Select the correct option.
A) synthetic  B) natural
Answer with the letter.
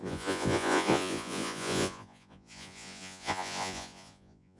A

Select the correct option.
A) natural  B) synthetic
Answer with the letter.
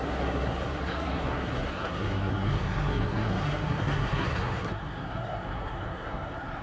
B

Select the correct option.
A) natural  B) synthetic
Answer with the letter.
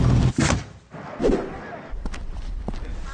A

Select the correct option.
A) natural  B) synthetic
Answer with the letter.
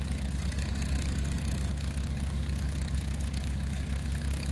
B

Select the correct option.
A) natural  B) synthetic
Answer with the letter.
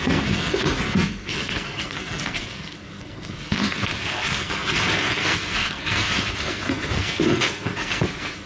B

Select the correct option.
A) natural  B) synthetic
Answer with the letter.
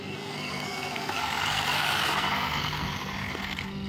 B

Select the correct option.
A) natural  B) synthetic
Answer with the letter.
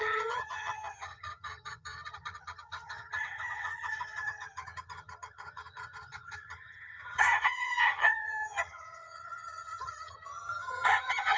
B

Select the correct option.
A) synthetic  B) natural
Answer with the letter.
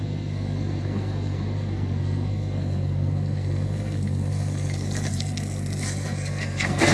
A